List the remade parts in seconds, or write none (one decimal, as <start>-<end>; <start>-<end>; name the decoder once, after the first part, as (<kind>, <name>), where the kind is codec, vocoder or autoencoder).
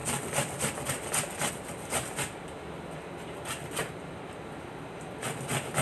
none